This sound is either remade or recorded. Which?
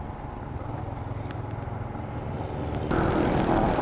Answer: recorded